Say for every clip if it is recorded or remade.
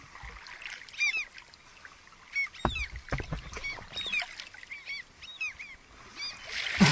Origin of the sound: recorded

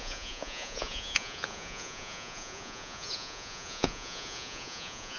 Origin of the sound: remade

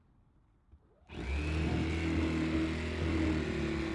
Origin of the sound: recorded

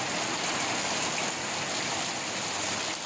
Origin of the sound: recorded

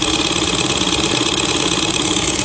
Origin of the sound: remade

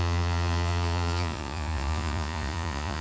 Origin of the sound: remade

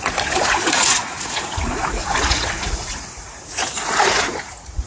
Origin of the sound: remade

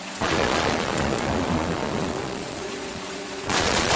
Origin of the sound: remade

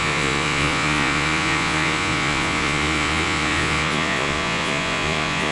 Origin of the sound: remade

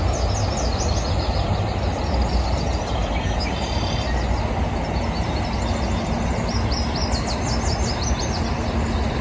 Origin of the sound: recorded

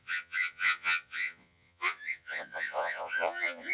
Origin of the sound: remade